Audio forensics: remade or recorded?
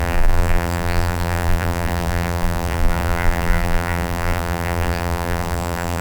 remade